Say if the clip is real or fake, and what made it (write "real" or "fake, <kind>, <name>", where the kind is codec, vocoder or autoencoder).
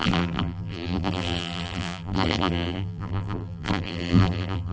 fake, vocoder, BigVGAN v2